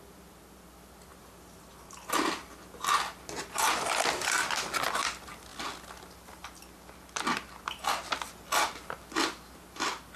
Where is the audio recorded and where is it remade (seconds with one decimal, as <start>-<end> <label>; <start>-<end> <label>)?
0.0-10.2 recorded